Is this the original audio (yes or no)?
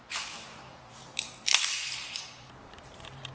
no